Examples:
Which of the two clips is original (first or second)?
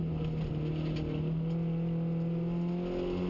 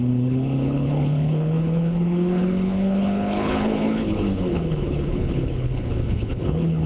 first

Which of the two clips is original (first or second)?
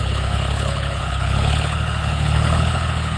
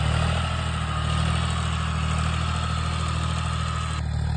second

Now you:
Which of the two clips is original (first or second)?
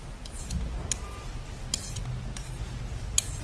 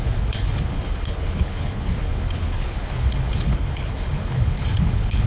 first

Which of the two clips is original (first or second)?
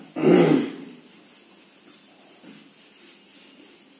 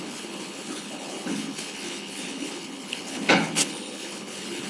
first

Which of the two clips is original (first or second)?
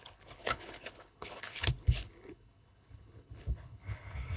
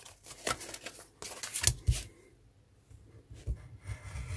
second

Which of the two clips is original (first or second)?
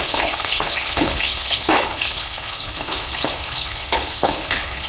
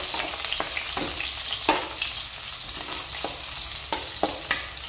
second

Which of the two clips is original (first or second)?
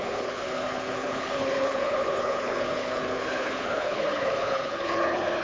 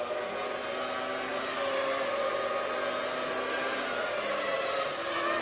second